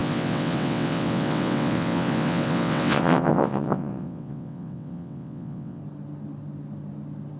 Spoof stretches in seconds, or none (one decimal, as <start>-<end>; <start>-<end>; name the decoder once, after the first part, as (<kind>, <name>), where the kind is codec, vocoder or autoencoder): 0.0-5.8 (vocoder, WaveNeXt)